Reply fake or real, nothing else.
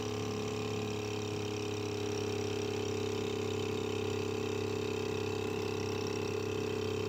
real